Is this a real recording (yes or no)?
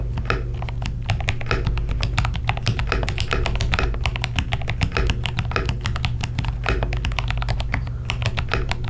yes